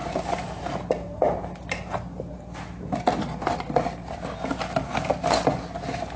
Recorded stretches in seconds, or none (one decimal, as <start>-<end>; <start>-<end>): 0.0-6.2